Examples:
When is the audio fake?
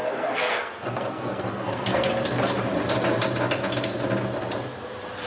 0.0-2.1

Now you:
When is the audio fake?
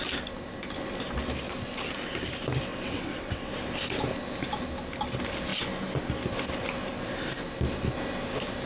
2.7-3.5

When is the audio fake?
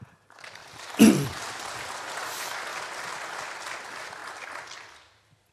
0.6-1.9; 4.2-5.5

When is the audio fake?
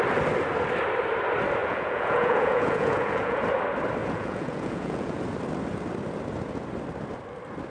1.6-3.4; 4.0-5.2